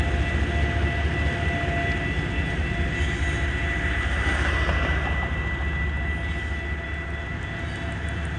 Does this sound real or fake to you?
real